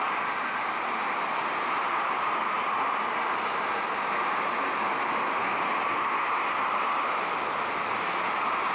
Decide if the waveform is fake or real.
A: real